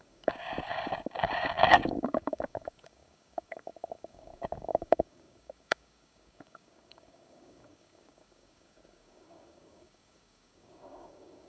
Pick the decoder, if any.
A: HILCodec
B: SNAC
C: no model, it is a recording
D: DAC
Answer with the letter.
D